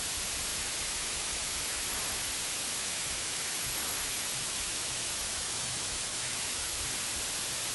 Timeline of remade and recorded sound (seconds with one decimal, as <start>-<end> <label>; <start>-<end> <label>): 0.0-0.5 recorded; 0.5-2.3 remade; 2.3-2.8 recorded; 2.8-6.8 remade; 6.8-7.7 recorded